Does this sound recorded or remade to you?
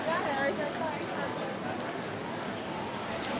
recorded